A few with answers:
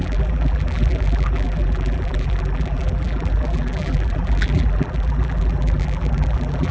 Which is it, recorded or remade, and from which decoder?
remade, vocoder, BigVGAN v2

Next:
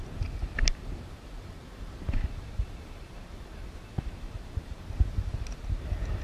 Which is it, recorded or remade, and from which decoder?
remade, vocoder, BigVGAN v2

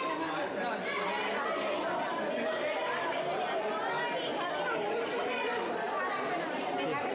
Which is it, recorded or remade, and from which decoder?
recorded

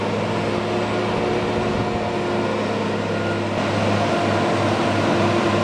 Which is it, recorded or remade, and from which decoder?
recorded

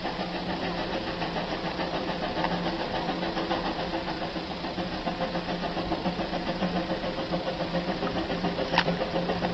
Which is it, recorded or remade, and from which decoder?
recorded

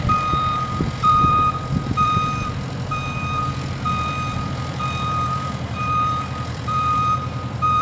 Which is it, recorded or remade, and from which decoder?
remade, vocoder, BigVGAN v2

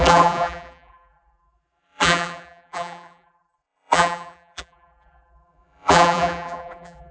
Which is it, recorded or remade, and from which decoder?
remade, vocoder, BigVGAN v2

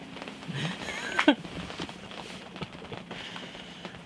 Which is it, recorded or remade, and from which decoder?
remade, vocoder, BigVGAN v2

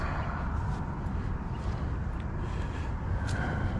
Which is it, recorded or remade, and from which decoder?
recorded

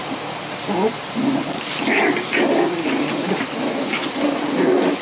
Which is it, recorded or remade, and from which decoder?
recorded